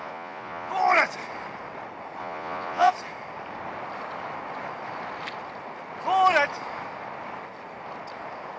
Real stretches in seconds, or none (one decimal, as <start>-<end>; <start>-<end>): 0.7-2.2; 2.9-8.6